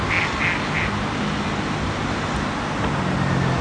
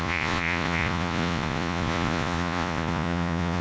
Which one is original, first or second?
first